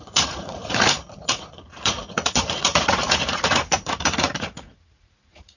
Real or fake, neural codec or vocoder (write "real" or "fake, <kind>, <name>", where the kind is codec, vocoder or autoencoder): fake, vocoder, Vocos